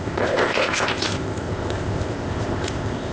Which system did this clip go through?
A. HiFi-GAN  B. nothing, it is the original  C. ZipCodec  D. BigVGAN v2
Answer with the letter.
C